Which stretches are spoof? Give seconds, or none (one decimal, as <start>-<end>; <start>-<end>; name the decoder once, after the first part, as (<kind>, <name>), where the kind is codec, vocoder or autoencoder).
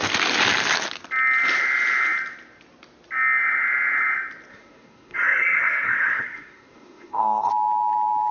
4.5-7.5 (codec, SNAC)